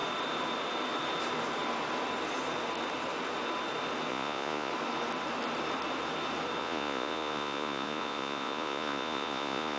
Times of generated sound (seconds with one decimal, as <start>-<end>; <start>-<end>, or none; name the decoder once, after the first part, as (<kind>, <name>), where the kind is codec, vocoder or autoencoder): 4.1-4.7 (vocoder, Vocos); 6.6-9.8